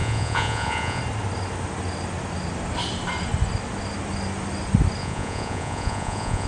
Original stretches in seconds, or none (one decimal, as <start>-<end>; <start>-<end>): 1.0-5.0